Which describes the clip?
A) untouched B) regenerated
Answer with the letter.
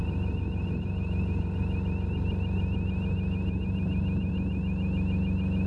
A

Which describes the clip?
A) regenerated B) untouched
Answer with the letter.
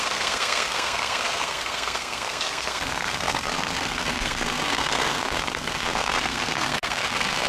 A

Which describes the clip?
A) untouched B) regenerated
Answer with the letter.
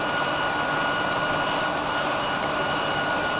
A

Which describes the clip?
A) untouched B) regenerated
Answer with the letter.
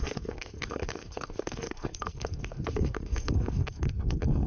B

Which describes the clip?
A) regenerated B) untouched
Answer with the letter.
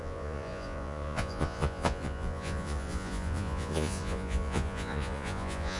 A